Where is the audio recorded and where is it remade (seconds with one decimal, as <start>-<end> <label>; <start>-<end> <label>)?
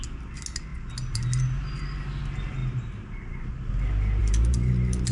0.0-2.6 recorded; 2.6-3.5 remade; 3.5-4.2 recorded; 4.2-5.1 remade